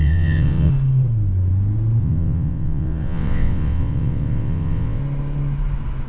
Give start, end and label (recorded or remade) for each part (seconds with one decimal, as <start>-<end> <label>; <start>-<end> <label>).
0.0-0.7 remade; 0.7-2.0 recorded; 2.0-5.0 remade; 5.0-6.1 recorded